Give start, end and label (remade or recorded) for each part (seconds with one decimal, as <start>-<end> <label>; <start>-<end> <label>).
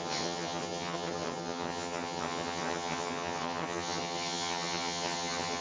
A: 0.0-5.6 remade